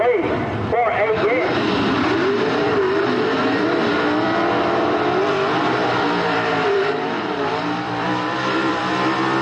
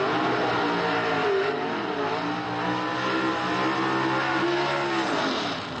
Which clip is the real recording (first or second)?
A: second